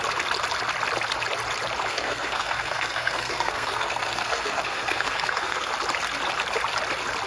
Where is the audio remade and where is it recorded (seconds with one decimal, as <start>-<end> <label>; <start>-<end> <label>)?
0.0-1.9 recorded; 1.9-5.7 remade; 5.7-7.3 recorded